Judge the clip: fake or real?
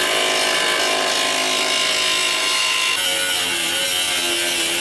real